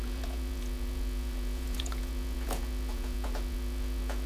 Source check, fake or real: fake